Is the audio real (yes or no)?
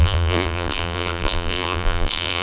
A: no